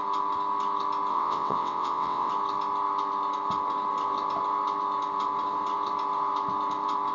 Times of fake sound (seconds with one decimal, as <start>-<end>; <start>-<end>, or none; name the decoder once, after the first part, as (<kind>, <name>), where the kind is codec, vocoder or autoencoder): 1.1-2.3 (vocoder, WaveNeXt)